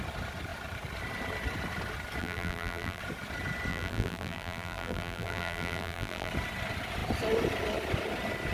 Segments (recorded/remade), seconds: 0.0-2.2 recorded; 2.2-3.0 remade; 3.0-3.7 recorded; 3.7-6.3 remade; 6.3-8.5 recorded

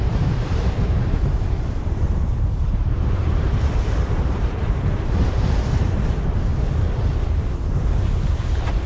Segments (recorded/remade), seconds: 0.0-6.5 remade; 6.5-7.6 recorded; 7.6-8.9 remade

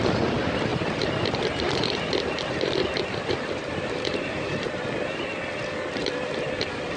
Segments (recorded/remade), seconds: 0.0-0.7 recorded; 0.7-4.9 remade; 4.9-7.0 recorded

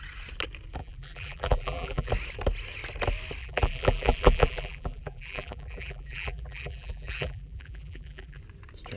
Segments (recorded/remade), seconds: 0.0-0.8 recorded; 0.8-2.1 remade; 2.1-3.4 recorded; 3.4-8.4 remade; 8.4-9.0 recorded

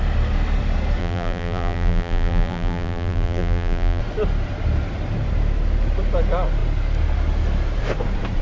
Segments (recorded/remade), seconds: 0.0-1.0 recorded; 1.0-4.0 remade; 4.0-8.4 recorded

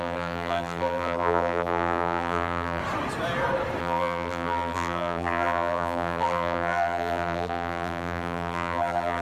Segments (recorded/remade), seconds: 0.0-2.8 remade; 2.8-3.8 recorded; 3.8-9.2 remade

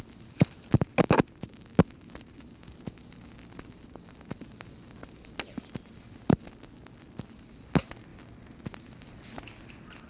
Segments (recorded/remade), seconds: 0.0-10.1 recorded

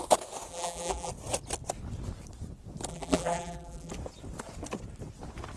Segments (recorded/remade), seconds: 0.0-0.5 recorded; 0.5-1.1 remade; 1.1-2.9 recorded; 2.9-3.9 remade; 3.9-5.6 recorded